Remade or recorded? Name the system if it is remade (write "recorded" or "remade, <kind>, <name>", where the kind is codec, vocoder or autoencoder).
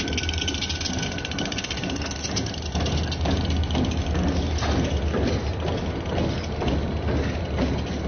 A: recorded